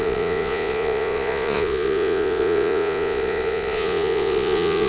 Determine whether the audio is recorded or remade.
remade